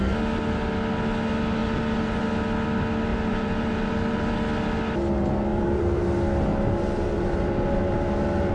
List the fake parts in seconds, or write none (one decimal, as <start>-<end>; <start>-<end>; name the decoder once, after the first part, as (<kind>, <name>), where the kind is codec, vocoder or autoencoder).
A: 1.6-2.2 (vocoder, BigVGAN v2); 3.1-4.4; 5.5-6.0; 6.5-8.5